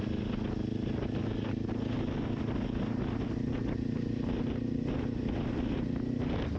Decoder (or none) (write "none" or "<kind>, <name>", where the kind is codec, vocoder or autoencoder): none